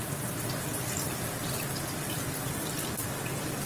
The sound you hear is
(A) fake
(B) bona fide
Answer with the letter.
B